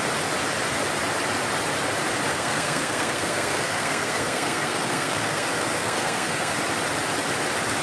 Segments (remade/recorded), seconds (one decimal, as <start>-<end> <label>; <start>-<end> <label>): 0.0-2.3 recorded; 2.3-6.5 remade; 6.5-7.8 recorded